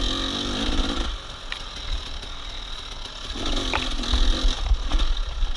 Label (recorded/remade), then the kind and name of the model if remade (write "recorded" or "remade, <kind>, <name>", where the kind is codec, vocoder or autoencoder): recorded